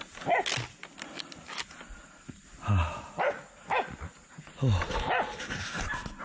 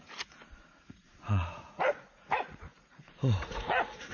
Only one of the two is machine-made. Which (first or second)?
second